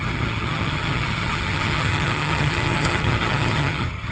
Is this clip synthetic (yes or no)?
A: yes